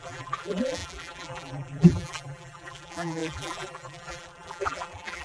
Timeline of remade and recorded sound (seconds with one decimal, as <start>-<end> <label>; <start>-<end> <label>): 0.0-5.2 remade